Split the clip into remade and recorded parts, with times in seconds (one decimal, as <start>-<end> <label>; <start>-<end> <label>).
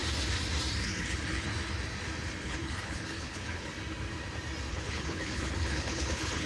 0.0-0.8 recorded; 0.8-1.5 remade; 1.5-2.4 recorded; 2.4-3.7 remade; 3.7-4.7 recorded; 4.7-6.5 remade